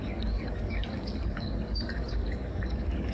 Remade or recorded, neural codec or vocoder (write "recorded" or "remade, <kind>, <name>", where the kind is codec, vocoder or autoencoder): remade, codec, DAC